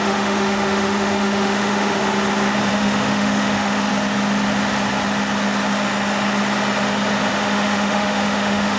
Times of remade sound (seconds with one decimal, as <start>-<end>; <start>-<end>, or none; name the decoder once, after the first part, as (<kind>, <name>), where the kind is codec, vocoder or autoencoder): 0.0-2.0 (autoencoder, DAC-VAE); 2.7-3.9; 7.3-8.8